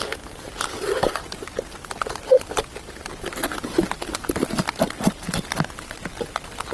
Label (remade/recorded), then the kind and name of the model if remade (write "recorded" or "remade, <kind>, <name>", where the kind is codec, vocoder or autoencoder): recorded